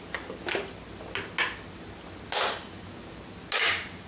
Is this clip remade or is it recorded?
recorded